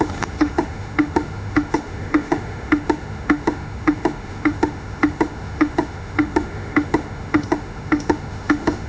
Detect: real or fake fake